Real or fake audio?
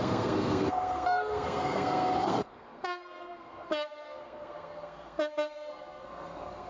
fake